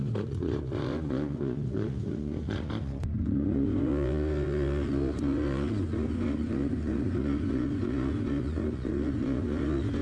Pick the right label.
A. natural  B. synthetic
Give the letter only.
B